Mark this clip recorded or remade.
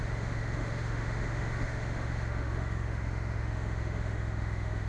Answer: remade